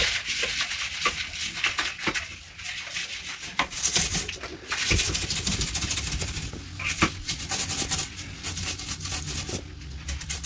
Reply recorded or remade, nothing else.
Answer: recorded